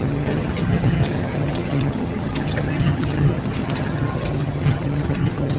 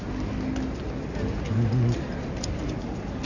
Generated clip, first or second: first